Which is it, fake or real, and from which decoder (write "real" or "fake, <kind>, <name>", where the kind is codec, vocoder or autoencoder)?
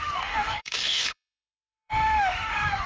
fake, autoencoder, DAC-VAE